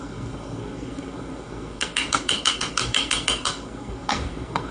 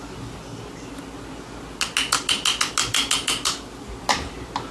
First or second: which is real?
second